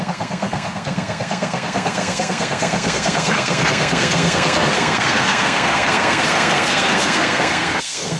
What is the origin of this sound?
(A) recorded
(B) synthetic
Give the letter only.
B